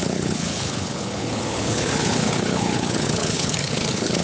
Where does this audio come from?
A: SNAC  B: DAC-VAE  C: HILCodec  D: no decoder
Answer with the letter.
C